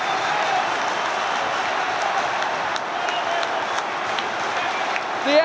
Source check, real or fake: real